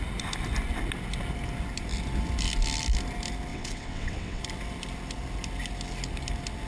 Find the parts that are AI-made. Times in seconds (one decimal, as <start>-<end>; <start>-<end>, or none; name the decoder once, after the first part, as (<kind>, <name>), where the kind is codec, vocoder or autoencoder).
3.5-4.4 (vocoder, WaveNeXt)